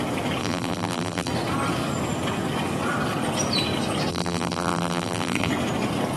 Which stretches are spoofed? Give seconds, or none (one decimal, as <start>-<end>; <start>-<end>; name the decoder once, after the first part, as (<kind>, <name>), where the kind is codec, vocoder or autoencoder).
0.4-1.3 (vocoder, BigVGAN v2); 4.1-5.5